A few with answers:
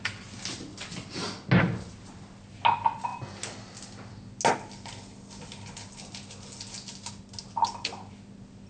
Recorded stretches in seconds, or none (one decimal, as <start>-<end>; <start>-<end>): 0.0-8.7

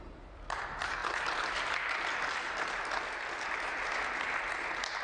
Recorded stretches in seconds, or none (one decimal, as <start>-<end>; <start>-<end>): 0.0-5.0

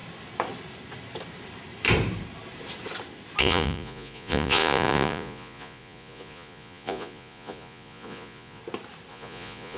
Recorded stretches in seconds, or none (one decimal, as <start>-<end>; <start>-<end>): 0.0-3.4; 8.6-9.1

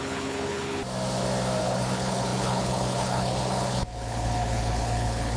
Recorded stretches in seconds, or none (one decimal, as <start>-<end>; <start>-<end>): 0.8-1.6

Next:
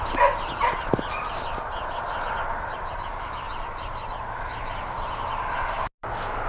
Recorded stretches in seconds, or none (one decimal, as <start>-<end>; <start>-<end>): 0.0-6.5

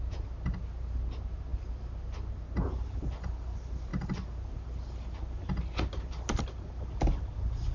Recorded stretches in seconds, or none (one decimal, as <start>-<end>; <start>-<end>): 0.0-7.7

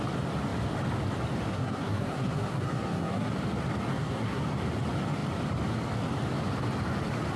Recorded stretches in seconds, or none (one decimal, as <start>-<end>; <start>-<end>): 0.0-1.5; 3.3-3.9; 4.4-7.4

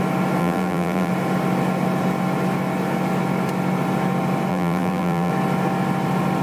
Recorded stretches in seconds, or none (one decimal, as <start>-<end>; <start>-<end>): 0.0-0.4; 1.1-4.5; 5.3-6.4